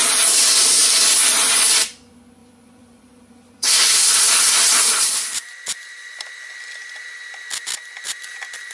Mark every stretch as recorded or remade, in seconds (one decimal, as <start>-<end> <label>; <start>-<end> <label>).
0.0-0.8 recorded; 0.8-1.9 remade; 1.9-2.4 recorded; 2.4-7.1 remade; 7.1-8.7 recorded